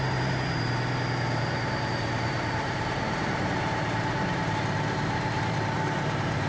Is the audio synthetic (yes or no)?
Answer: yes